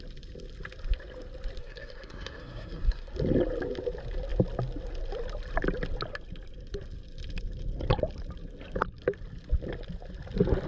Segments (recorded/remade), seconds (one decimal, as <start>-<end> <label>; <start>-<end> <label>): 0.0-1.6 recorded; 1.6-3.1 remade; 3.1-10.7 recorded